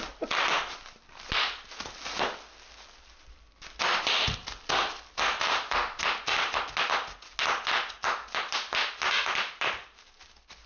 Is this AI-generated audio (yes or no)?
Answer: no